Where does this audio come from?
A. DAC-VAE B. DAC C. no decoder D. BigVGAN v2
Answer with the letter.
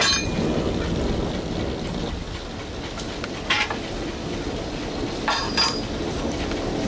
C